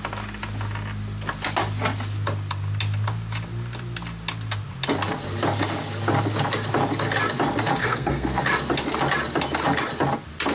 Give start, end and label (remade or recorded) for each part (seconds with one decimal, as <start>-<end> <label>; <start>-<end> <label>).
0.0-7.8 recorded; 7.8-8.4 remade; 8.4-10.5 recorded